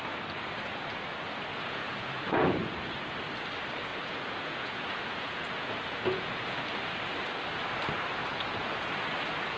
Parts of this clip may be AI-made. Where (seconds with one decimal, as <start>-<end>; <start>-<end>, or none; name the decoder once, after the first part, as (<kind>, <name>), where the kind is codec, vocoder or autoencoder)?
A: 1.5-2.7 (vocoder, Vocos); 3.9-6.6; 8.2-8.9

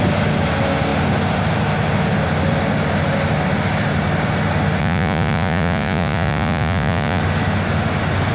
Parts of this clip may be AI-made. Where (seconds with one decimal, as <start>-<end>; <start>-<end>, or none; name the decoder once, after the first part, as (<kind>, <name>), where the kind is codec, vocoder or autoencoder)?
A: 4.8-7.2 (vocoder, Vocos)

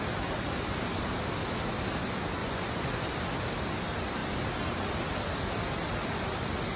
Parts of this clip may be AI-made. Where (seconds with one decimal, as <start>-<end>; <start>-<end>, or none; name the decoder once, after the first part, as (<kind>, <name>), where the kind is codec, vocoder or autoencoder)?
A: 2.4-3.1 (vocoder, Vocos)